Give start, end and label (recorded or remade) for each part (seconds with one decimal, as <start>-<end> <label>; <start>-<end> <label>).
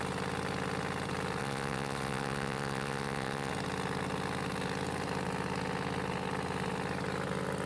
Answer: 0.0-1.4 recorded; 1.4-3.5 remade; 3.5-7.7 recorded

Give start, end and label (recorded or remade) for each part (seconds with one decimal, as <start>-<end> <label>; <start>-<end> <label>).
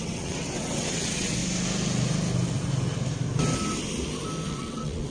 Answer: 0.0-1.4 remade; 1.4-4.5 recorded; 4.5-5.1 remade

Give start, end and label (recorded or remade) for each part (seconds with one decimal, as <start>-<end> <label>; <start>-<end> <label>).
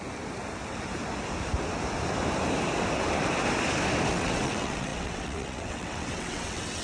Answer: 0.0-4.1 recorded; 4.1-6.8 remade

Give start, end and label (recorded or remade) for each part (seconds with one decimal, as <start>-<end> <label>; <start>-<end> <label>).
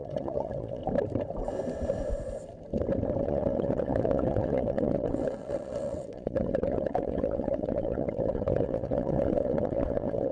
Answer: 0.0-0.8 remade; 0.8-3.2 recorded; 3.2-10.3 remade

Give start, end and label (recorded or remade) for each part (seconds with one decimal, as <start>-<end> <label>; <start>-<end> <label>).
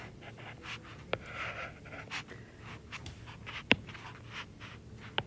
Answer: 0.0-5.3 recorded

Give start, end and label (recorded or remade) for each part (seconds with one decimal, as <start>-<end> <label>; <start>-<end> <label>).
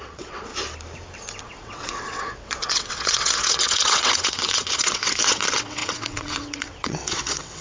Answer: 0.0-0.5 remade; 0.5-1.4 recorded; 1.4-7.6 remade